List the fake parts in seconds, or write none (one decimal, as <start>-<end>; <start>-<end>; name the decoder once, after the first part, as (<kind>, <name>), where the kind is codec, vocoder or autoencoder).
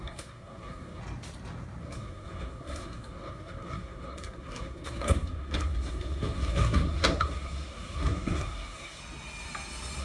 0.0-1.0 (codec, SNAC); 1.8-9.0